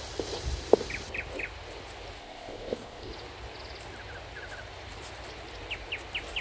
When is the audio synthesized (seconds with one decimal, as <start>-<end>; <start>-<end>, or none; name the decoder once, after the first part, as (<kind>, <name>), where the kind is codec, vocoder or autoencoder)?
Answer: 2.2-3.1 (codec, ZipCodec)